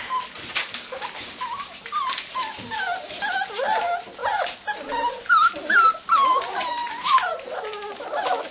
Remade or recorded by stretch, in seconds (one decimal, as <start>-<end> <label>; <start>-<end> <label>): 0.0-8.5 recorded